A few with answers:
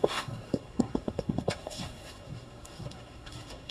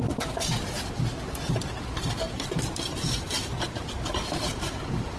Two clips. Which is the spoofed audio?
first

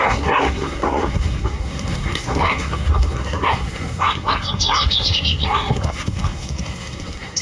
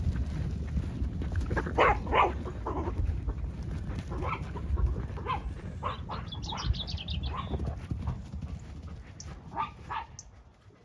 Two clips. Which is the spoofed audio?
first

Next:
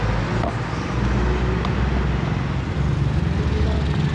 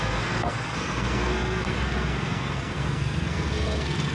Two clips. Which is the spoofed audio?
second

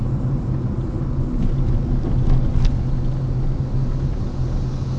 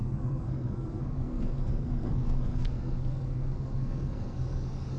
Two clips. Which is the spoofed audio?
second